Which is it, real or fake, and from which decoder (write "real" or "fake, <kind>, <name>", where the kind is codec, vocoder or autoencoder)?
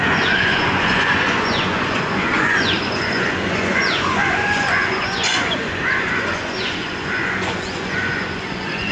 fake, vocoder, Vocos